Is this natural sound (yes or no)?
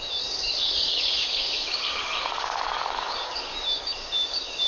no